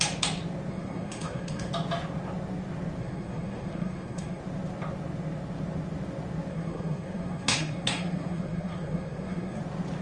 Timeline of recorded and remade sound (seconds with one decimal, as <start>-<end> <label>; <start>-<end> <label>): 0.0-0.7 recorded; 0.7-1.7 remade; 1.7-3.0 recorded; 3.0-4.4 remade; 4.4-6.5 recorded; 6.5-9.6 remade; 9.6-10.0 recorded